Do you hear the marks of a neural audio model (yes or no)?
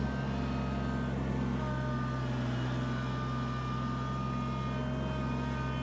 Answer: no